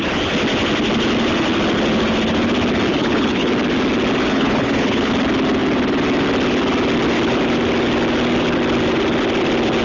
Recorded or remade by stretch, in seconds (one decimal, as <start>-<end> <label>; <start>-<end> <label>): 0.0-2.9 recorded; 2.9-3.5 remade; 3.5-4.3 recorded; 4.3-5.1 remade; 5.1-9.8 recorded